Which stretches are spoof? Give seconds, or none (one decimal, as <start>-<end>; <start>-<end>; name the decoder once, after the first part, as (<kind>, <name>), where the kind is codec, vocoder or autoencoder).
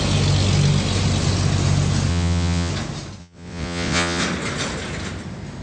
2.1-2.7 (vocoder, WaveNeXt); 3.2-4.2